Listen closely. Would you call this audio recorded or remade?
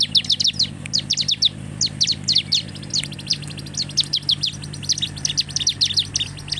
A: recorded